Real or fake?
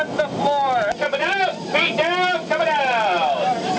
real